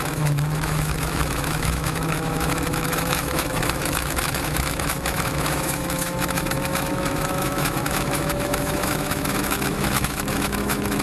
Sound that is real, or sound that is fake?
fake